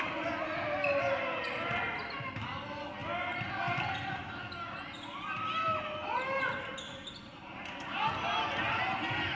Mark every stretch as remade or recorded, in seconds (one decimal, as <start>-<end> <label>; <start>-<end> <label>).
0.0-9.3 recorded